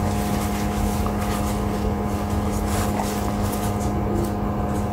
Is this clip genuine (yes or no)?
yes